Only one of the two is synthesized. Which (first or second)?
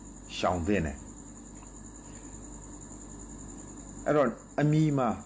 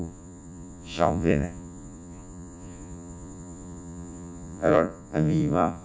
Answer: second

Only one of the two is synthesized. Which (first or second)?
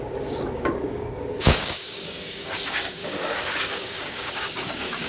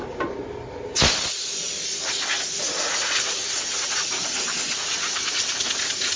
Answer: first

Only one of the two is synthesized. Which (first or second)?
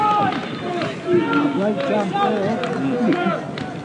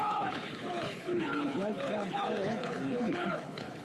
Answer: second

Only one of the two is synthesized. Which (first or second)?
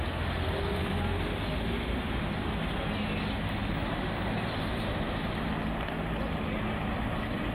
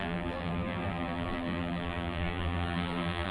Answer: second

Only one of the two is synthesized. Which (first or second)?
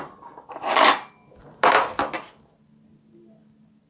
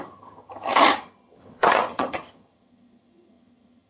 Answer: second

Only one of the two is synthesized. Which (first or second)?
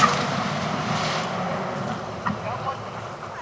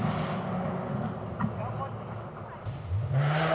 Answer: first